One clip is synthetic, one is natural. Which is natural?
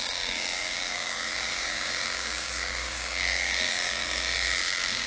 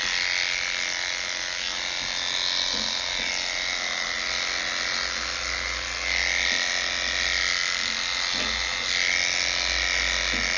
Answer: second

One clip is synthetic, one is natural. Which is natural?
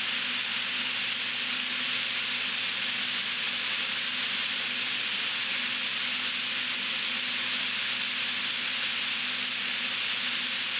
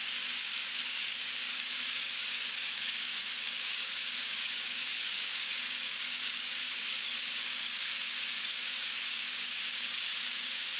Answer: first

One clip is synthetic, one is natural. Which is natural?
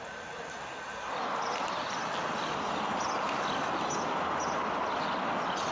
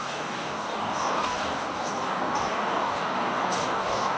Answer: first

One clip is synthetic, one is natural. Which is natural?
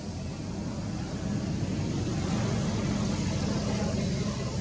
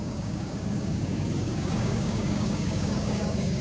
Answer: first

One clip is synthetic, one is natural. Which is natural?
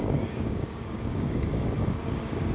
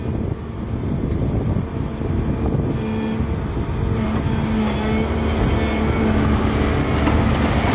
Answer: second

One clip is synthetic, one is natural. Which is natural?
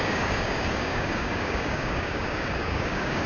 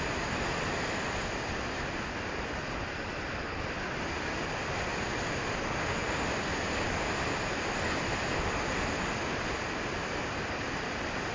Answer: second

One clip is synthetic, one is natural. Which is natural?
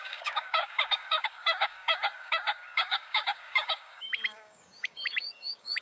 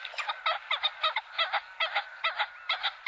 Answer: second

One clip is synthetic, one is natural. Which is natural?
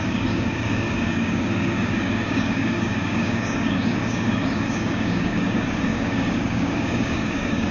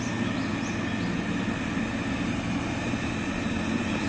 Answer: second